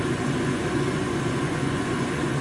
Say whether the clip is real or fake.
fake